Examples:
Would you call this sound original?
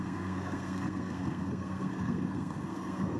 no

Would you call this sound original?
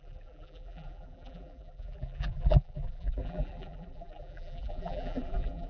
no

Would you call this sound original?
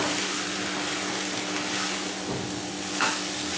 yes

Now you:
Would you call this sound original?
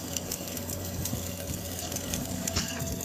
no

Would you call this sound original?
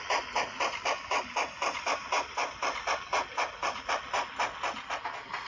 no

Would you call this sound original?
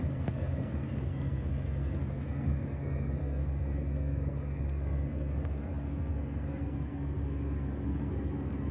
no